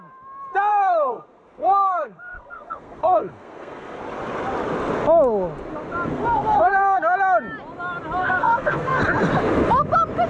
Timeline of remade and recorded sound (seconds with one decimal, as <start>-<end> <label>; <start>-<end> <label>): 0.0-0.7 recorded; 0.7-4.0 remade; 4.0-6.1 recorded; 6.1-7.0 remade; 7.0-8.2 recorded; 8.2-9.0 remade; 9.0-10.3 recorded